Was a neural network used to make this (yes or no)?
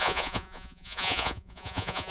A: yes